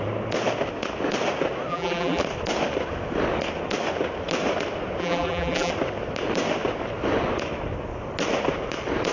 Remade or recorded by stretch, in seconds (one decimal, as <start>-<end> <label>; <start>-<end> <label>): 0.0-1.7 recorded; 1.7-2.2 remade; 2.2-5.0 recorded; 5.0-5.7 remade; 5.7-9.1 recorded